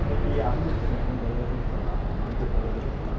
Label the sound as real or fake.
real